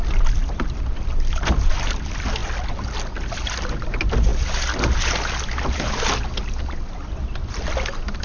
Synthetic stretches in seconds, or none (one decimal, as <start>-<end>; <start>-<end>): none